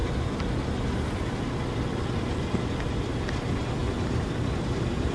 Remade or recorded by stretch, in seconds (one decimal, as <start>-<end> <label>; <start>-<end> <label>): 0.0-5.1 recorded